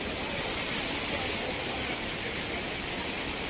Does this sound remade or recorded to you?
recorded